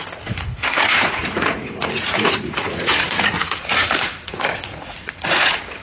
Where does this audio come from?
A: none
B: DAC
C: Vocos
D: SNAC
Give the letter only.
C